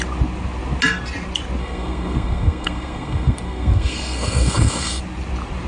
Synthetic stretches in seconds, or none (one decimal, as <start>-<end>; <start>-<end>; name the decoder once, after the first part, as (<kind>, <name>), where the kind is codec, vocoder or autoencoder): 1.6-5.0 (codec, SNAC)

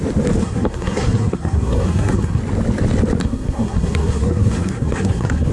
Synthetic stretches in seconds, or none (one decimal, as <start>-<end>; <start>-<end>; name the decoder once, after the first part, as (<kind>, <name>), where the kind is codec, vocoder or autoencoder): 0.4-2.4 (codec, SNAC); 3.2-5.5

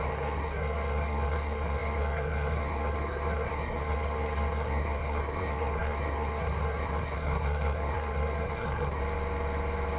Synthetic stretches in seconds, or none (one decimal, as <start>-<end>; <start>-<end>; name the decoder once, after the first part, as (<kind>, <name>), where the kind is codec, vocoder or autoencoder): 0.0-9.0 (codec, SNAC)

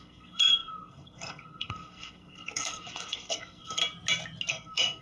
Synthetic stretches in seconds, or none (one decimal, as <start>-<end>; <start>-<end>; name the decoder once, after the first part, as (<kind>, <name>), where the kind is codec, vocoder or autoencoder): 0.0-3.8 (codec, SNAC); 4.5-5.0